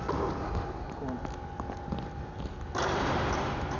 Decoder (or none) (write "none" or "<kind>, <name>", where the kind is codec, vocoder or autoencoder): none